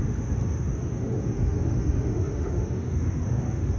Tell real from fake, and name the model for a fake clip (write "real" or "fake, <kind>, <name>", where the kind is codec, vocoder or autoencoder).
fake, autoencoder, DAC-VAE